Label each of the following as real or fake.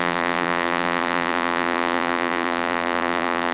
fake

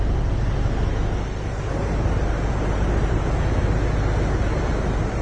real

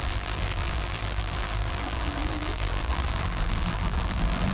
fake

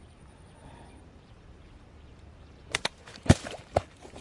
fake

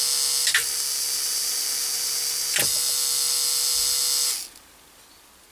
real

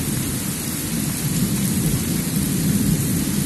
fake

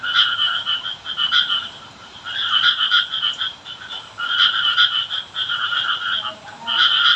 fake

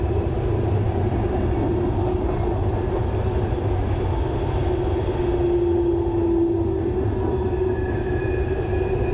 real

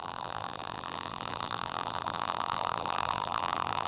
fake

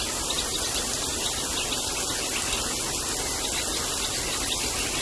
real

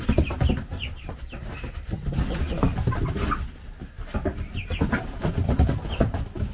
real